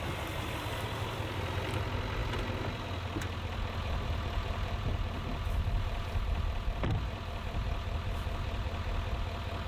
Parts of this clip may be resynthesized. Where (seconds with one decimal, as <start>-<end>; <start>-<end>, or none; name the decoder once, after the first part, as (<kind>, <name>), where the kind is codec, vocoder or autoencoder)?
none